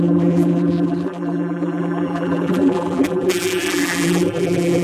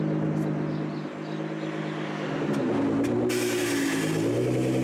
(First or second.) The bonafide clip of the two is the second